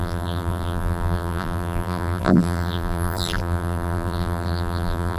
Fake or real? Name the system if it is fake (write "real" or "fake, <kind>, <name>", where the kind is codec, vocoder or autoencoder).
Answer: fake, vocoder, BigVGAN v2